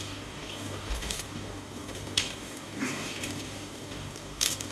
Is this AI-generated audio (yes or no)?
yes